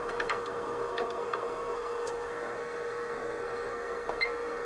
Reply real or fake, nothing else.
fake